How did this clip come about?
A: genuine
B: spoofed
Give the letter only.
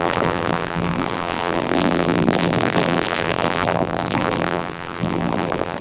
B